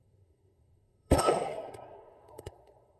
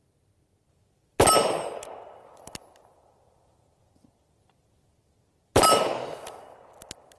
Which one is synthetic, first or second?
first